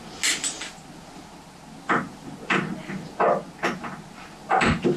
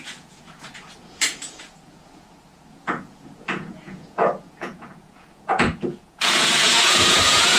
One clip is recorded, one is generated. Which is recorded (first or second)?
first